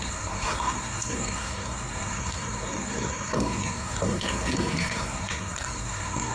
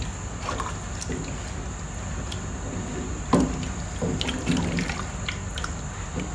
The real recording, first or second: second